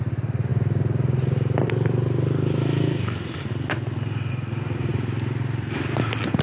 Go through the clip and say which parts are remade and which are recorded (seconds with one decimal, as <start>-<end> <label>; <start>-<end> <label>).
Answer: 0.0-6.4 recorded

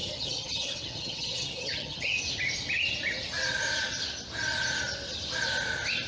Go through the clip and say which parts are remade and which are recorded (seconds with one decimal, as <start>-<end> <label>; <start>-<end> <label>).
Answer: 0.0-2.2 remade; 2.2-6.1 recorded

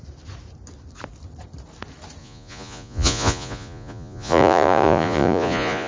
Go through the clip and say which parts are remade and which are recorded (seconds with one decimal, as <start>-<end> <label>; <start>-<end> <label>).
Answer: 0.0-2.2 recorded; 2.2-5.9 remade

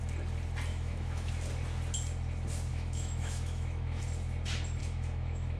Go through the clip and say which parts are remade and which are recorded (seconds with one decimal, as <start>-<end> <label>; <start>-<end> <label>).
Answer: 0.0-0.7 recorded; 0.7-1.3 remade; 1.3-2.7 recorded; 2.7-4.0 remade; 4.0-4.8 recorded; 4.8-5.6 remade